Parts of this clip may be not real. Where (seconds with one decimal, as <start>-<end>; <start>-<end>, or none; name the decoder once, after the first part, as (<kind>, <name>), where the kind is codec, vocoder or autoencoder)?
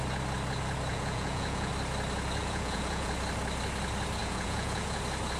0.9-1.7 (vocoder, Vocos); 2.4-3.1; 4.2-5.0